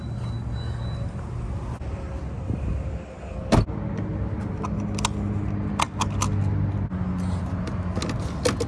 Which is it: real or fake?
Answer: real